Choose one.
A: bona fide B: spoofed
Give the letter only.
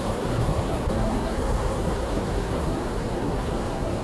B